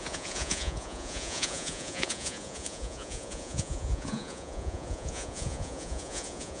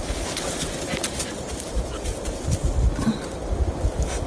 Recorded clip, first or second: second